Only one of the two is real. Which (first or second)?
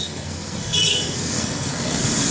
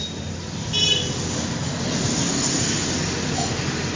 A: second